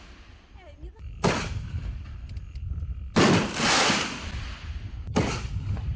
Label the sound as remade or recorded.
recorded